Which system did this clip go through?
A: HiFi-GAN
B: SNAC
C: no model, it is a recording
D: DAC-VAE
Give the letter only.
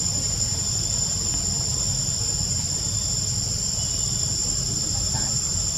C